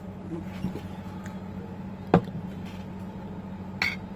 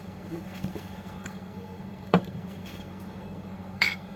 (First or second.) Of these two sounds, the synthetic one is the second